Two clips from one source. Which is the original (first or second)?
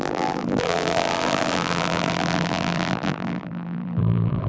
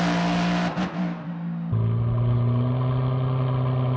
second